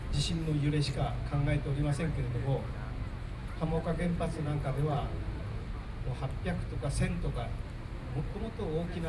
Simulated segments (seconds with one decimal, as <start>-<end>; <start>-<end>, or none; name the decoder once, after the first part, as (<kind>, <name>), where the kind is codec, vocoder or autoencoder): 3.4-5.4 (vocoder, BigVGAN v2)